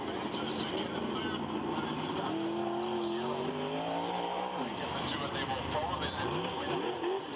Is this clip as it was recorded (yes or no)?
yes